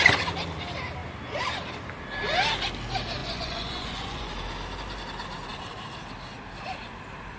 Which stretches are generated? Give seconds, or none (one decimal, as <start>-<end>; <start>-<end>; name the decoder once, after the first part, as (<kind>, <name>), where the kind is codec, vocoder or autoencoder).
3.2-4.3 (vocoder, Vocos)